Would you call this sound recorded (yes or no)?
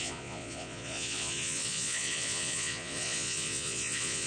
no